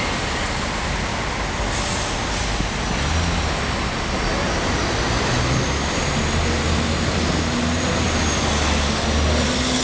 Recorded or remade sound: recorded